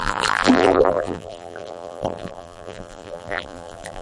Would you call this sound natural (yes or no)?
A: no